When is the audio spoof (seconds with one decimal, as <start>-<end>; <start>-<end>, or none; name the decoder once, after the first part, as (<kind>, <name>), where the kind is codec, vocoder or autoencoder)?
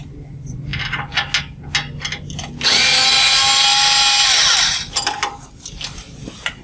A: none